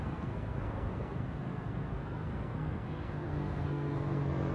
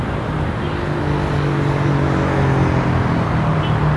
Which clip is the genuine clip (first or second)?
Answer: second